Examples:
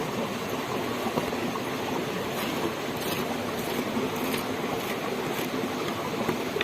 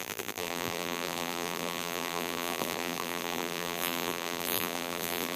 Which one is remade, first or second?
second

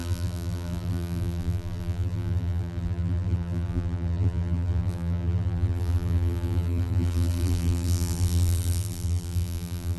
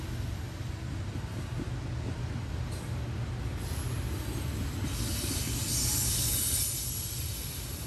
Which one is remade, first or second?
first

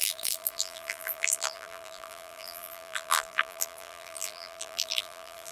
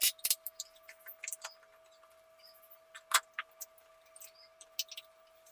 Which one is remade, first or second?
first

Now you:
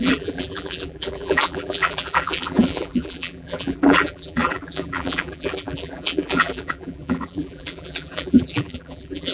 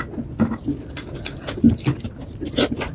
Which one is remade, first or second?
first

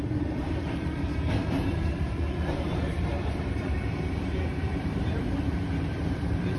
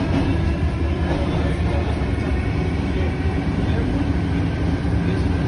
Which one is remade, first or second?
first